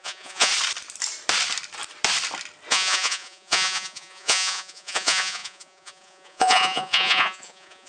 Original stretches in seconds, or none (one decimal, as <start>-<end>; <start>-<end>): 0.5-2.7